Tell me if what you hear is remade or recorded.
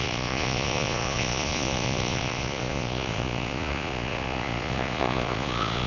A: remade